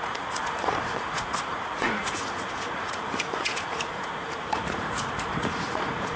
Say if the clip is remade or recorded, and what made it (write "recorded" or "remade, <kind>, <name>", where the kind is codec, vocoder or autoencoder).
remade, vocoder, Vocos